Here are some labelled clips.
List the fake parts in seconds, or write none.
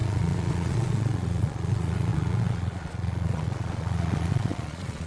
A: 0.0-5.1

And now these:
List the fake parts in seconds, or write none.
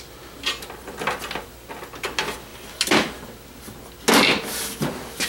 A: none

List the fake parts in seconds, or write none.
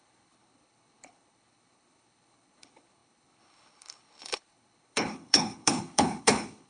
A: 0.0-6.7